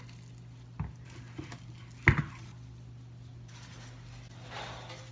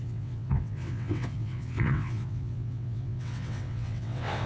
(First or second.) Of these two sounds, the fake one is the second